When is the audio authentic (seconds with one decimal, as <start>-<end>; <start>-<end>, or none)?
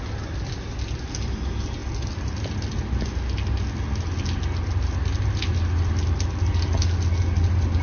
0.0-7.8